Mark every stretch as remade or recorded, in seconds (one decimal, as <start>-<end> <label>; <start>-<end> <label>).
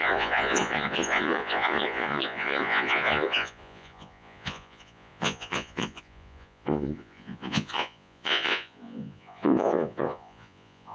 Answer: 0.0-10.9 remade